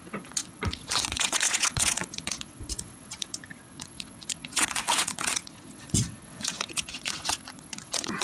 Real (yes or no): no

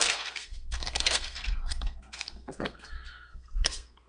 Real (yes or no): no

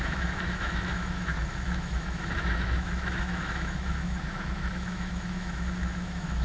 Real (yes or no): no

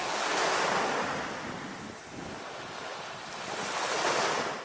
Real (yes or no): yes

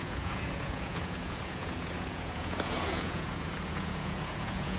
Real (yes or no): no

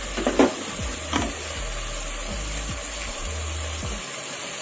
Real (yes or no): yes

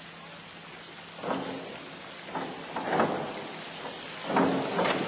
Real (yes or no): yes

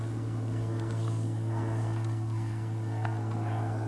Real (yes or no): no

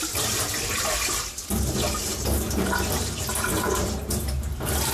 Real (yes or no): yes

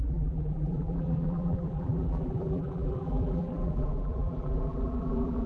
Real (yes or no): no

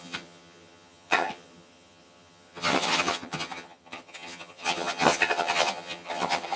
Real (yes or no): no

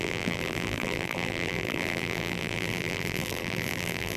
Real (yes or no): no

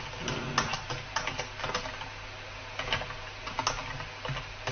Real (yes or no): yes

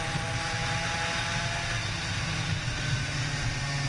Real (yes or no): yes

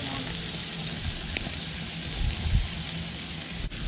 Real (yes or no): yes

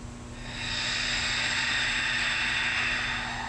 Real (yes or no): yes